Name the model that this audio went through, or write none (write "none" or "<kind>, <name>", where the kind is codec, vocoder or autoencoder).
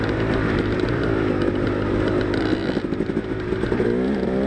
none